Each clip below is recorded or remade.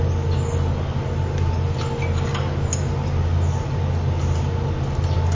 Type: recorded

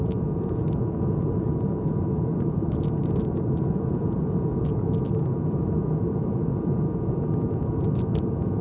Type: remade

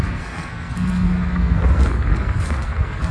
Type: remade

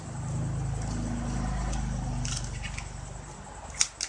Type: recorded